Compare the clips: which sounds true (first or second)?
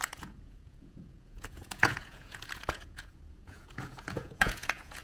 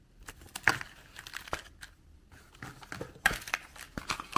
second